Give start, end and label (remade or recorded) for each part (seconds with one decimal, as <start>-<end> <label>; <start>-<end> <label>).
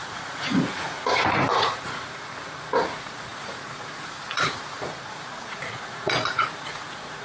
0.0-7.2 remade